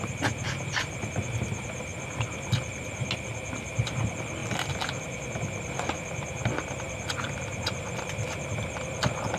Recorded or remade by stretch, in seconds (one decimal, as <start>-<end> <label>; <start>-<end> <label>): 0.0-4.4 recorded; 4.4-5.0 remade; 5.0-9.4 recorded